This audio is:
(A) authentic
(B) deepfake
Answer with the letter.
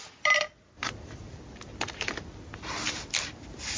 A